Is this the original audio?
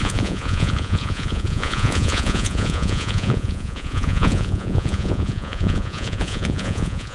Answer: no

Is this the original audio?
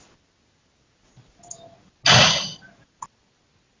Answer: yes